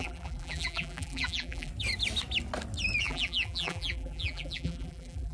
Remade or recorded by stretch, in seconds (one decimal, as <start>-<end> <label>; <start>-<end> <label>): 0.0-1.7 remade; 1.7-3.0 recorded; 3.0-5.3 remade